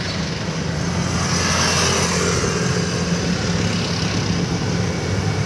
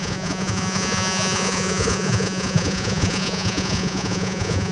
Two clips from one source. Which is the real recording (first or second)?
first